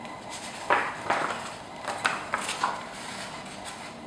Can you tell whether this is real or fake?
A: real